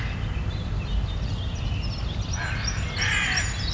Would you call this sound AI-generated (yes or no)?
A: no